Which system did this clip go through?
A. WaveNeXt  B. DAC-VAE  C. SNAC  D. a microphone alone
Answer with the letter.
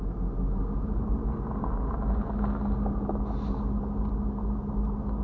D